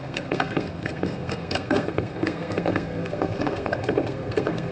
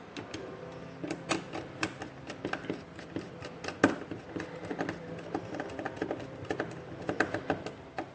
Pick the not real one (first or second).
first